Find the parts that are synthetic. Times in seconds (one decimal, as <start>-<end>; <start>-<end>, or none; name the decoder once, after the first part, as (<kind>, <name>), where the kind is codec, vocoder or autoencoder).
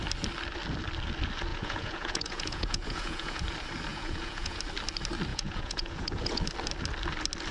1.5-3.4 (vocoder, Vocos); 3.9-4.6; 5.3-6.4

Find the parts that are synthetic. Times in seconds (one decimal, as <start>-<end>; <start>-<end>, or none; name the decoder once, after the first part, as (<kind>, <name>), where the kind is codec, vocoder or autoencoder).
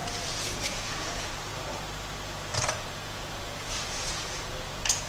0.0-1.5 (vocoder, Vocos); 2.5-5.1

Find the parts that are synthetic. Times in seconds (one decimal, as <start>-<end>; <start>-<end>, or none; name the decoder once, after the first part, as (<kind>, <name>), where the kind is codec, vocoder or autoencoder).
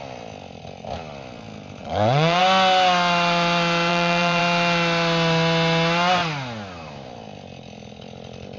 1.8-2.4 (vocoder, Vocos); 3.9-4.4